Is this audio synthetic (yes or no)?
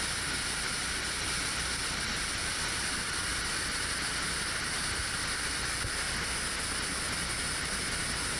no